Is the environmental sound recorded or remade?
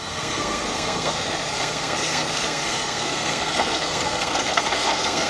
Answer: remade